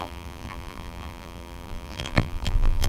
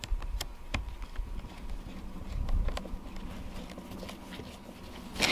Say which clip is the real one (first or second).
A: second